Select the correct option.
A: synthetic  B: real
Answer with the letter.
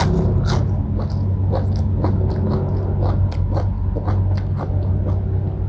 B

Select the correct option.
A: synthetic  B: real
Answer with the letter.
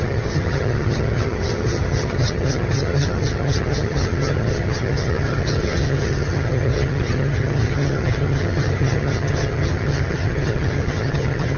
A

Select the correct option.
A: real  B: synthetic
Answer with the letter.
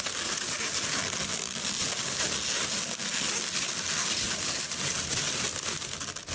A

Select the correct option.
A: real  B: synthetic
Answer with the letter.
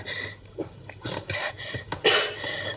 A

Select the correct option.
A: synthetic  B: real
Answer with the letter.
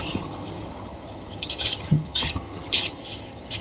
A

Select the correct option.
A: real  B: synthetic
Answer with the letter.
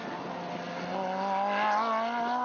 A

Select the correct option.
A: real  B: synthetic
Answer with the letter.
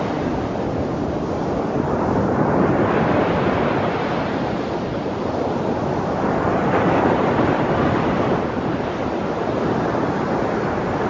A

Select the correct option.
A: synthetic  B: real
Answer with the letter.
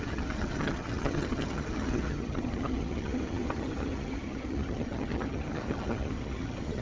A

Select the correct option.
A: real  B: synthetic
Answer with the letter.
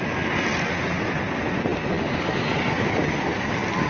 A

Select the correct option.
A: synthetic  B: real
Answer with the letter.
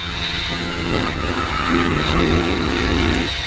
A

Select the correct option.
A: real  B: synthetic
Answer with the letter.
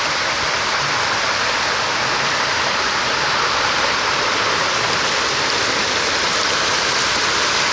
A